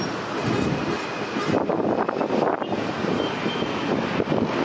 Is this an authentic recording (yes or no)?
yes